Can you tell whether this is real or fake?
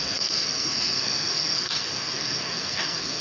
fake